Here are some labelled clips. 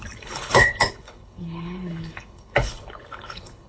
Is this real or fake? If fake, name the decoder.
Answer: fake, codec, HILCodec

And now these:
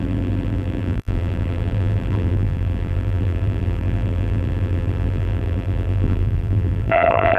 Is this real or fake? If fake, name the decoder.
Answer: fake, vocoder, BigVGAN v2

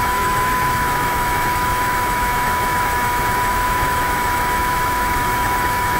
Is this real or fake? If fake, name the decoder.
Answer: fake, autoencoder, DAC-VAE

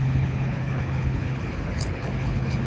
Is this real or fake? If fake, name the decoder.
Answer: fake, codec, HILCodec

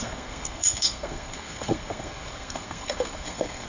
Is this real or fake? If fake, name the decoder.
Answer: fake, codec, SNAC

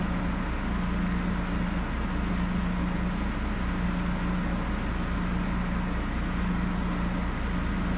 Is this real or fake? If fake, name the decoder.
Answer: real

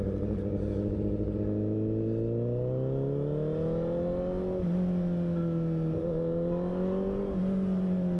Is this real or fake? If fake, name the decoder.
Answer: real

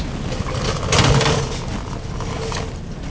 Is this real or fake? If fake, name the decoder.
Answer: real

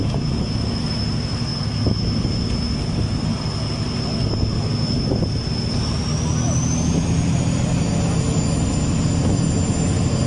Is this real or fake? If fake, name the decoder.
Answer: real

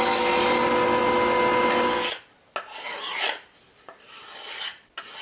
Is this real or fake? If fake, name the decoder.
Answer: real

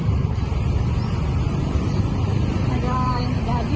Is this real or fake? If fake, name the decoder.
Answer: real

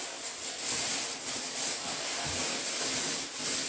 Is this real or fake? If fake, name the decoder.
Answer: real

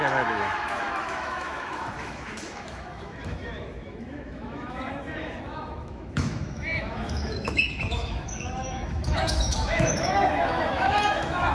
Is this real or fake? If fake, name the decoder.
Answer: fake, autoencoder, DAC-VAE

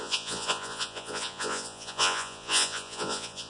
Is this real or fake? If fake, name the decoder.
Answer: fake, vocoder, Vocos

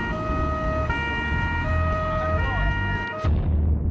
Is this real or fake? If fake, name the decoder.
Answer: real